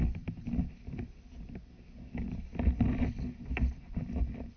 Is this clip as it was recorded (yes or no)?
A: yes